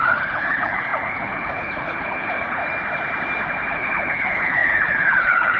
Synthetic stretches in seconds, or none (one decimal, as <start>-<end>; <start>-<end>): 0.0-2.6; 3.7-5.6